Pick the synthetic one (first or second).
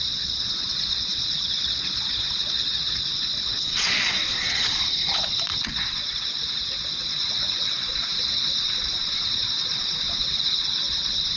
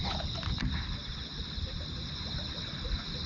first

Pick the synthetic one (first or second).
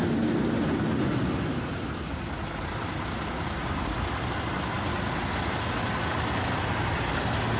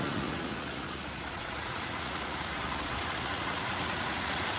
second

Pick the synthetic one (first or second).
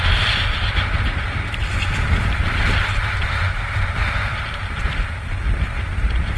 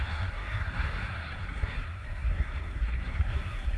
second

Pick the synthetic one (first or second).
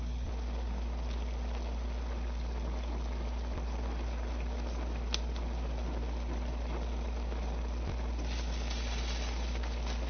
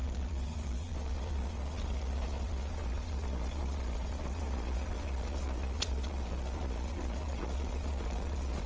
second